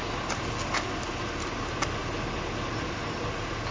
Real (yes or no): yes